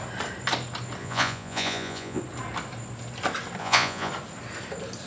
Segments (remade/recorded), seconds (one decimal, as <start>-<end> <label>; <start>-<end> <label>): 0.0-1.0 recorded; 1.0-2.2 remade; 2.2-3.6 recorded; 3.6-4.1 remade; 4.1-5.1 recorded